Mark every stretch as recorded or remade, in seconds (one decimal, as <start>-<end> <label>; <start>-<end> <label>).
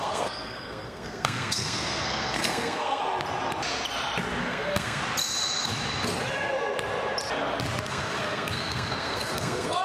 0.0-3.0 remade; 3.0-4.4 recorded; 4.4-5.0 remade; 5.0-7.9 recorded; 7.9-9.8 remade